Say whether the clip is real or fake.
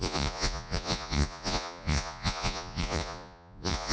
fake